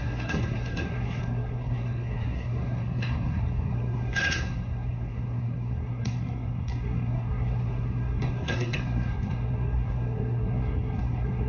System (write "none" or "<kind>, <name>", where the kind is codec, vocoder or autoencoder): codec, SNAC